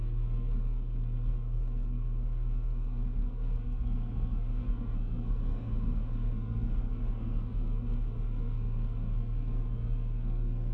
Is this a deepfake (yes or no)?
yes